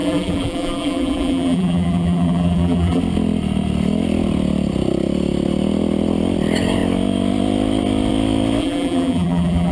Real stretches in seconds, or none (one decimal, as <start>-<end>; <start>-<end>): 3.0-8.6